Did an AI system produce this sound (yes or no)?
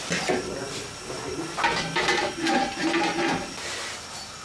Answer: no